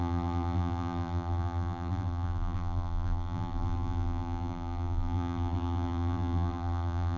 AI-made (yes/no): yes